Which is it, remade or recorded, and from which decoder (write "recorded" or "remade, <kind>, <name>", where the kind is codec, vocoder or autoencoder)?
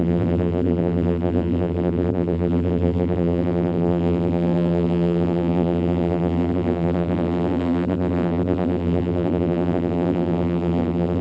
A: remade, vocoder, BigVGAN v2